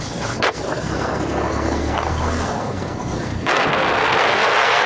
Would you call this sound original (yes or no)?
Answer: no